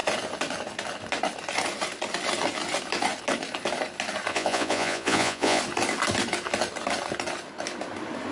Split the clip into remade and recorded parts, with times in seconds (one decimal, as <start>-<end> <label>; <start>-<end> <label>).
0.0-4.3 recorded; 4.3-5.6 remade; 5.6-8.3 recorded